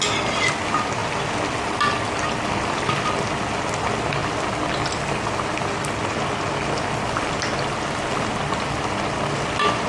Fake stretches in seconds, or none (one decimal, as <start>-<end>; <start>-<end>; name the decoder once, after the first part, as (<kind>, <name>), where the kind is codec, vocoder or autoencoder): none

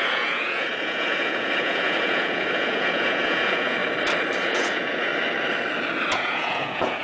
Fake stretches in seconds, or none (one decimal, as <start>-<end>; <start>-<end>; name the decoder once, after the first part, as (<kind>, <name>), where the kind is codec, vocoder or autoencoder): 0.0-3.8 (vocoder, Vocos); 4.4-5.1; 6.1-7.0

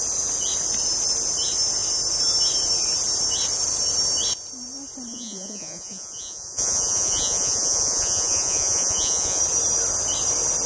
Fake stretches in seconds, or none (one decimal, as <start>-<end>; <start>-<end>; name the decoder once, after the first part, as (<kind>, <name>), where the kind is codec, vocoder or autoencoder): 5.1-9.4 (vocoder, Vocos)

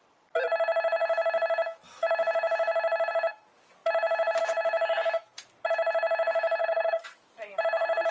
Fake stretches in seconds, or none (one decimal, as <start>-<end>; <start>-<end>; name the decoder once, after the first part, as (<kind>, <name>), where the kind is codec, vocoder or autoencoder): 6.6-7.2 (vocoder, HiFi-GAN)

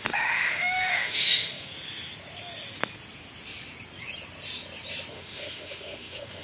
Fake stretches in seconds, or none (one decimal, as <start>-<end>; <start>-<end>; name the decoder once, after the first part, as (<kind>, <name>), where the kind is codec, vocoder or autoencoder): 0.0-1.5 (autoencoder, DAC-VAE); 5.1-6.4